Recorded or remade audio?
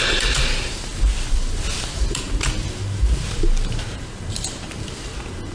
recorded